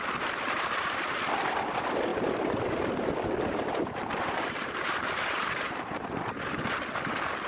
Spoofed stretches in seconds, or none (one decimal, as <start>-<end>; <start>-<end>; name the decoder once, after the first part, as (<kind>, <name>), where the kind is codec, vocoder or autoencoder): 2.1-6.6 (vocoder, BigVGAN v2)

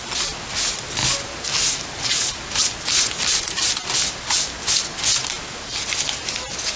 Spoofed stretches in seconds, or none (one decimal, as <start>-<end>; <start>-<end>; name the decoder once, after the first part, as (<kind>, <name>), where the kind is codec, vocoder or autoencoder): none

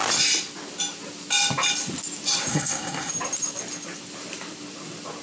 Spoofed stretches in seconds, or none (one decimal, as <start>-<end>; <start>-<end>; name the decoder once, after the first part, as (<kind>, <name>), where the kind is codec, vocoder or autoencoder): 2.5-3.1 (codec, SNAC)

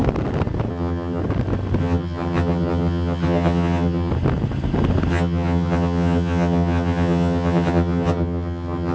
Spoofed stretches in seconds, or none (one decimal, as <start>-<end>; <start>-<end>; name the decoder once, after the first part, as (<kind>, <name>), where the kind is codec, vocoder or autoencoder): 0.7-1.2 (vocoder, HiFi-GAN); 1.8-4.1; 5.1-8.9

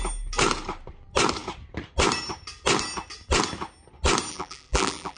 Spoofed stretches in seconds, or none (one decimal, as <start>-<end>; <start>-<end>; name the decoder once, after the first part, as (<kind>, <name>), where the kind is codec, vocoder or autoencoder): 4.3-5.2 (vocoder, BigVGAN v2)